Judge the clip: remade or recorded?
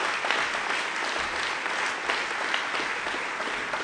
recorded